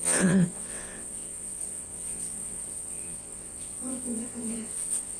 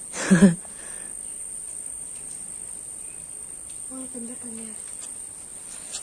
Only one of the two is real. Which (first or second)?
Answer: second